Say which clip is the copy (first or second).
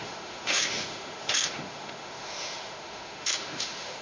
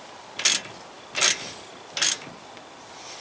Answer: first